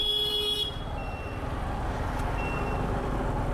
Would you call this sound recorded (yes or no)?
yes